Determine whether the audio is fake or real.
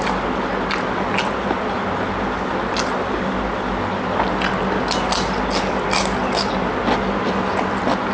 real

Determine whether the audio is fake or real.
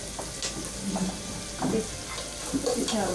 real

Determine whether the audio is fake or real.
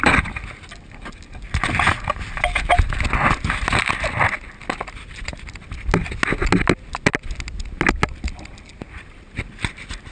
real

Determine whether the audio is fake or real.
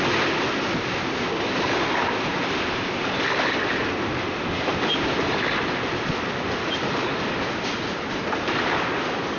real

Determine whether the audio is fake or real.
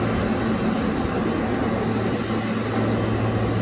real